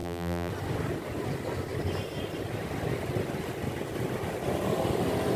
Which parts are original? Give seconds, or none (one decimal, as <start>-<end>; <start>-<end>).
0.5-5.4